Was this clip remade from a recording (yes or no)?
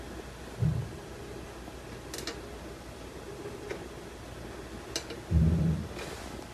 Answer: no